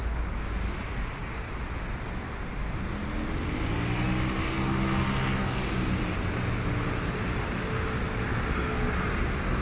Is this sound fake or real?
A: real